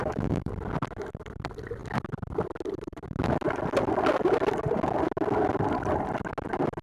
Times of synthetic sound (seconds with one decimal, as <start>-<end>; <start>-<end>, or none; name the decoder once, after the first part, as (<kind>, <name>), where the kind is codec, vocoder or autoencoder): 0.0-0.5 (autoencoder, DAC-VAE)

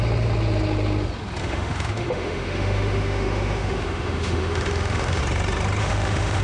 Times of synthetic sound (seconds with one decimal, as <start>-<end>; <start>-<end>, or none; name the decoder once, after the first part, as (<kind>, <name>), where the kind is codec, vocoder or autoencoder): 1.4-5.2 (autoencoder, DAC-VAE); 5.8-6.4

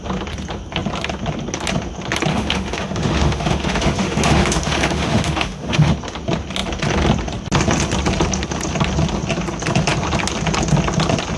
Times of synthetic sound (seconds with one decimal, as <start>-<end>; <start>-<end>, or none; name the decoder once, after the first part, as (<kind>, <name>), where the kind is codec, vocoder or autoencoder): 2.3-5.9 (autoencoder, DAC-VAE)